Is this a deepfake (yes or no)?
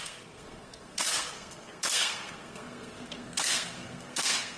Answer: yes